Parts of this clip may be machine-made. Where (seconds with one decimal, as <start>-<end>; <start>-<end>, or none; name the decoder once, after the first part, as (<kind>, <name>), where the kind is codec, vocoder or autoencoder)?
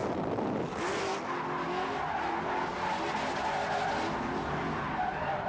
none